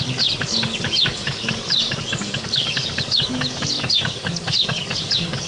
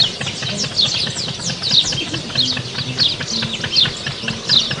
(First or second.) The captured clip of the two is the second